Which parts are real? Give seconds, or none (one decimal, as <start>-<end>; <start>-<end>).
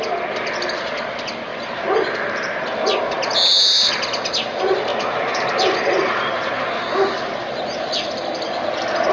0.0-4.9; 5.4-9.1